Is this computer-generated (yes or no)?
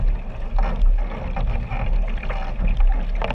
no